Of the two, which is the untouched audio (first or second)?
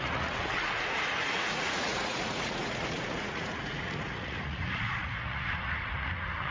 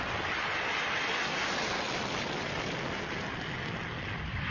second